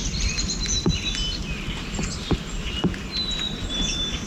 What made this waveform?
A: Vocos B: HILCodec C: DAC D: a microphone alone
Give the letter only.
D